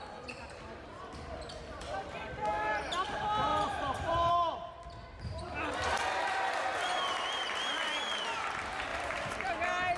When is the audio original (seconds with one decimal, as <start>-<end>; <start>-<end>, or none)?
0.0-3.5; 4.3-8.9; 9.5-10.0